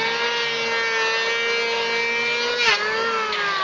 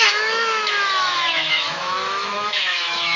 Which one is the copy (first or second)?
second